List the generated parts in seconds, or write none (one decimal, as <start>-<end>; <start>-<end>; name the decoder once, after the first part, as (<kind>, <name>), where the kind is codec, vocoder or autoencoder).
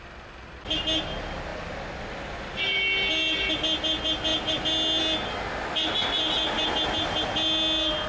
none